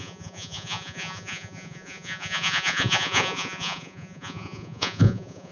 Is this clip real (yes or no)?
no